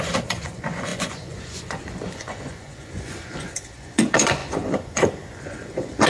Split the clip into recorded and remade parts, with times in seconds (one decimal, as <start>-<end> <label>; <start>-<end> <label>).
0.0-6.1 remade